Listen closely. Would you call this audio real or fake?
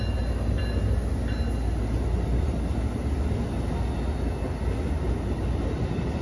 real